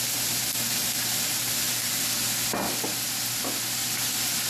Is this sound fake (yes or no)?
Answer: no